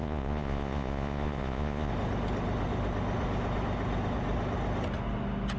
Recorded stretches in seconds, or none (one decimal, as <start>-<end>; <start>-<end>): 1.9-5.6